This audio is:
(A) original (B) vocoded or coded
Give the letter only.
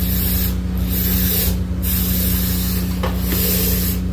A